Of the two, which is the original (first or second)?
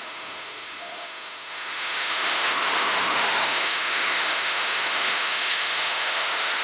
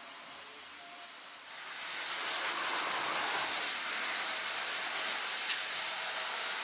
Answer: second